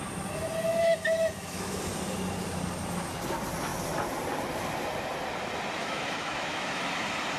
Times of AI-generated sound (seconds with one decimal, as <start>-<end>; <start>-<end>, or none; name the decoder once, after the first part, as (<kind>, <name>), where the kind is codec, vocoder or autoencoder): 0.7-1.8 (autoencoder, DAC-VAE); 5.8-6.9